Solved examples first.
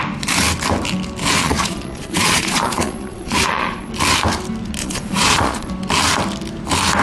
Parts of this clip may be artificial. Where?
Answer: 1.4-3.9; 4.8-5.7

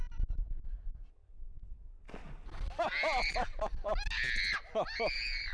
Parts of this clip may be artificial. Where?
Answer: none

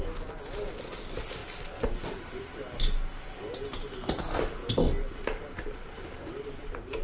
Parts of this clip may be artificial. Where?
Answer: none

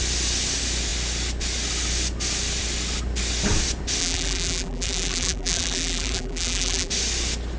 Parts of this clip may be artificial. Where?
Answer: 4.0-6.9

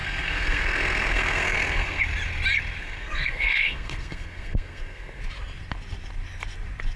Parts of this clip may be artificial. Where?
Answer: 0.0-2.0; 2.8-5.2

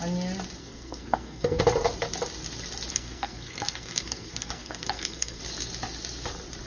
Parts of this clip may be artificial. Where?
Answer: 0.6-1.6; 2.9-5.4